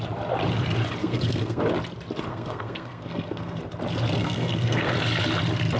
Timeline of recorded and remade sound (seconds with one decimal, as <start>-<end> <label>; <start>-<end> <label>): 0.0-1.0 recorded; 1.0-1.6 remade; 1.6-2.3 recorded; 2.3-3.6 remade; 3.6-4.2 recorded; 4.2-4.9 remade; 4.9-5.8 recorded